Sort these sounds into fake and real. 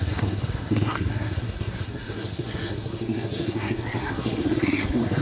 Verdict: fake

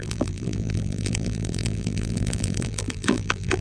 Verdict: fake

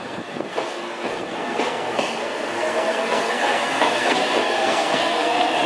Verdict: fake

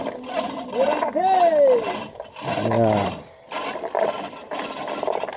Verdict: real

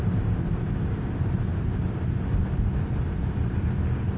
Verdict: real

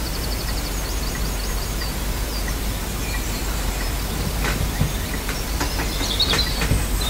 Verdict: fake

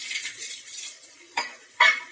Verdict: fake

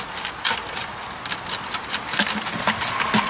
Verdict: real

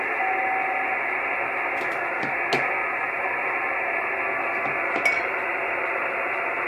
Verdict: real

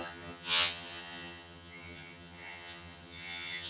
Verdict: fake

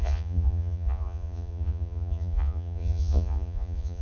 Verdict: fake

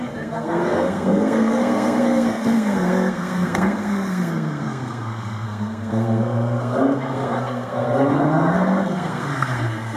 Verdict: fake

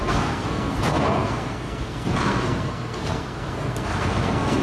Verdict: fake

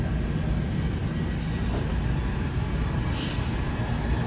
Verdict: real